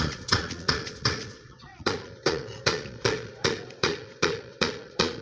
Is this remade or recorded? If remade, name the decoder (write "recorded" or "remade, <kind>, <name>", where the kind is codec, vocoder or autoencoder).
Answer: remade, vocoder, Vocos